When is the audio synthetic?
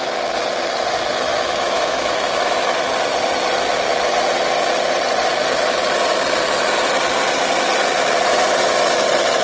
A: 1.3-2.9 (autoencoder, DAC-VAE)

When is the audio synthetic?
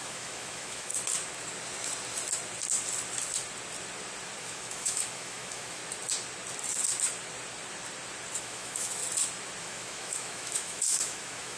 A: 0.0-0.9 (autoencoder, DAC-VAE); 4.4-5.8; 8.4-9.0; 9.6-11.6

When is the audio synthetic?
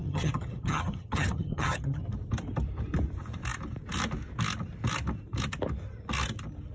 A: 0.0-2.0 (vocoder, HiFi-GAN)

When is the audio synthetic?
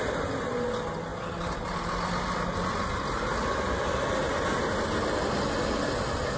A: none